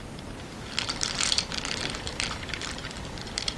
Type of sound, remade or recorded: remade